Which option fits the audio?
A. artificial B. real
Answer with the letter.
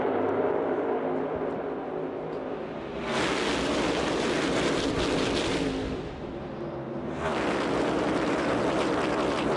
B